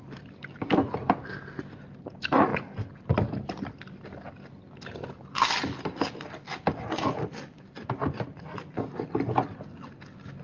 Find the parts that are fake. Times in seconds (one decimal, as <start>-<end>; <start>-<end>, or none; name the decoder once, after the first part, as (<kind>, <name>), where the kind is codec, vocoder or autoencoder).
none